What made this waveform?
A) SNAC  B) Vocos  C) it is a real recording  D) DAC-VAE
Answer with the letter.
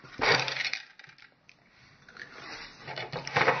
C